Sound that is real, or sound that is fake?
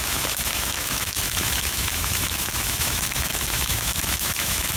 fake